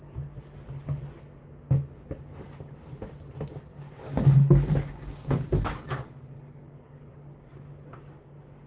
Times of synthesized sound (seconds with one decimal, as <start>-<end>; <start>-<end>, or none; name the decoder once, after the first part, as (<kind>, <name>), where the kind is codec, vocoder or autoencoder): 1.4-2.2 (codec, DAC); 3.7-7.1